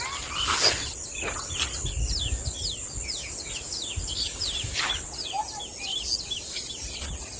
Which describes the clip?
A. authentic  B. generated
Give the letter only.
A